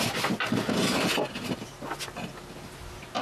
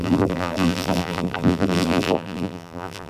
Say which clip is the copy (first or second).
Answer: second